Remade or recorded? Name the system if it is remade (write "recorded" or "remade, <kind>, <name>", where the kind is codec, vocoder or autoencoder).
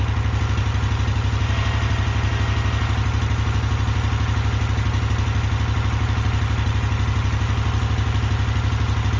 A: recorded